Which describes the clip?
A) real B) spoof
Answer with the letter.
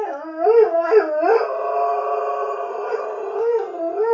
A